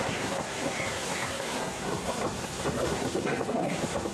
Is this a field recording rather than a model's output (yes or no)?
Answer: no